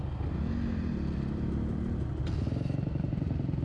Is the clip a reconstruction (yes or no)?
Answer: no